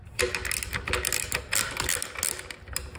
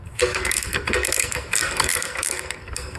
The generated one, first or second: second